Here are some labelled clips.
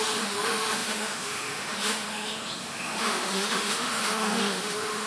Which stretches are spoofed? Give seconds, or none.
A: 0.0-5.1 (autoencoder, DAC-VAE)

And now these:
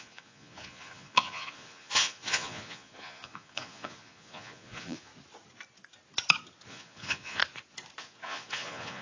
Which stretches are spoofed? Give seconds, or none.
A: 0.0-5.1 (vocoder, Vocos); 6.7-7.4; 8.0-9.0

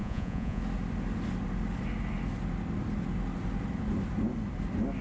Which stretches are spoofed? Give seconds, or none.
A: 0.0-0.6 (vocoder, Vocos)

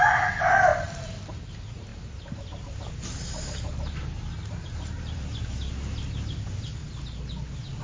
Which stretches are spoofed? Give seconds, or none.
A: 0.7-1.5 (vocoder, BigVGAN v2); 1.9-5.5